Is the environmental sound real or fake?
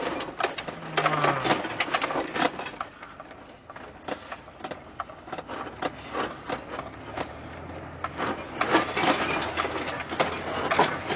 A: real